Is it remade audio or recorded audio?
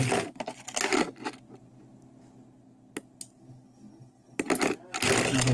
recorded